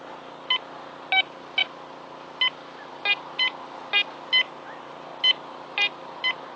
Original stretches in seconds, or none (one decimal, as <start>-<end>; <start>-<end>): 0.0-6.6